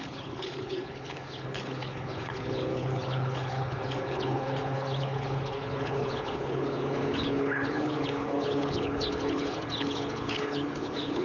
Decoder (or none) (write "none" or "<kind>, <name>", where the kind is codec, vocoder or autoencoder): codec, HILCodec